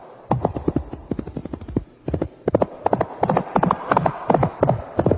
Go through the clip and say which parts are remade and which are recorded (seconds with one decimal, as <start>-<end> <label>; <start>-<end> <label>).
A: 0.0-1.4 recorded; 1.4-4.5 remade; 4.5-5.2 recorded